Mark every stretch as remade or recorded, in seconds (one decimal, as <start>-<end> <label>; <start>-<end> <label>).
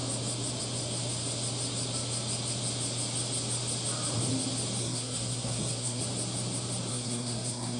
0.0-4.8 recorded; 4.8-6.0 remade; 6.0-6.9 recorded; 6.9-7.8 remade